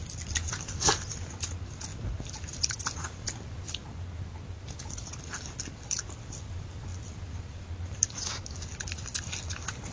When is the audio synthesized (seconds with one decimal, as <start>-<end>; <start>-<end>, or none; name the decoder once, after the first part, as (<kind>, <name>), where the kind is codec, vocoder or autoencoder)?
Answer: none